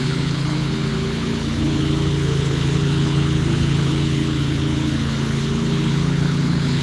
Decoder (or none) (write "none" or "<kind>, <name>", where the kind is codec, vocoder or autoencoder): codec, HILCodec